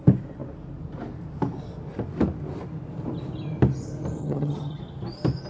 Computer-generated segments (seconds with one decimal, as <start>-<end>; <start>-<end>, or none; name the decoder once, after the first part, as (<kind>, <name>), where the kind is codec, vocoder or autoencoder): 4.2-4.8 (vocoder, HiFi-GAN)